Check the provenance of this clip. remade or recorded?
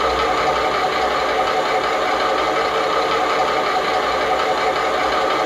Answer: recorded